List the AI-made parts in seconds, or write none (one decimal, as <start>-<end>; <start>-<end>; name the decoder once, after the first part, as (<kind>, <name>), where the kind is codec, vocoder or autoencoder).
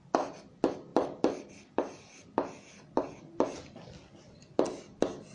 none